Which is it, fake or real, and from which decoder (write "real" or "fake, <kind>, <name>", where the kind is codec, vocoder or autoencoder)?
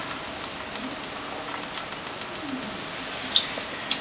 real